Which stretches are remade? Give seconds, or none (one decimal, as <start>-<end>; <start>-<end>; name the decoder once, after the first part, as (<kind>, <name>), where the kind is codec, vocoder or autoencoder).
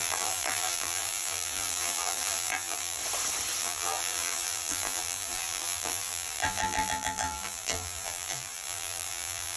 0.0-3.0 (vocoder, BigVGAN v2); 3.6-9.6